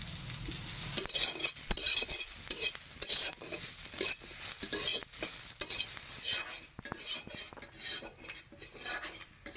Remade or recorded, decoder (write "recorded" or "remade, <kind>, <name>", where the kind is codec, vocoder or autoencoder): recorded